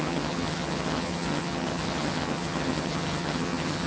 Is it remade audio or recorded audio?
remade